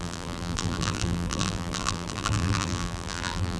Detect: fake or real fake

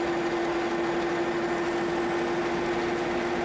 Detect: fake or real real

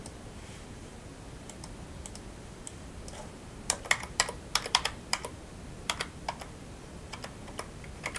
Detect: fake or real fake